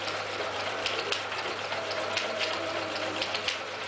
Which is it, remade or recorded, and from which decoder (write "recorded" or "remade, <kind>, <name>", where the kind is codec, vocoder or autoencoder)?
recorded